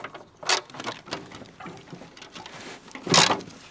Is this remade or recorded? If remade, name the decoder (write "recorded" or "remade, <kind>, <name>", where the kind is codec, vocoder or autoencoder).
recorded